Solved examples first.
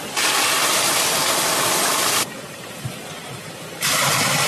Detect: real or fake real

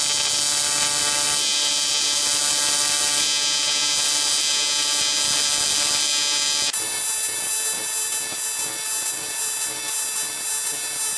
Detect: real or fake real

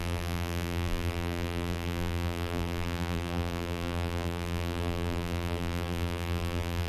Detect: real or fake fake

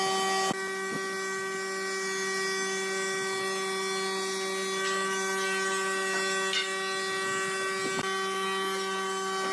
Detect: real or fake real